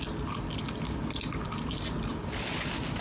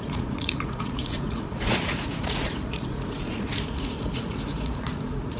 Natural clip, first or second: first